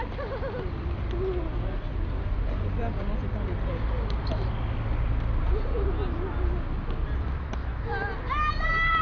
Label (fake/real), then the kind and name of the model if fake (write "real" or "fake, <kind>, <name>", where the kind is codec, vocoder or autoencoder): real